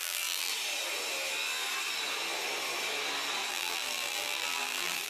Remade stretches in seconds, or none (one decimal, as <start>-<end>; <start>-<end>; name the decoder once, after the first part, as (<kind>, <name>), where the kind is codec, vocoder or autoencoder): 0.0-0.5 (vocoder, BigVGAN v2); 3.5-5.1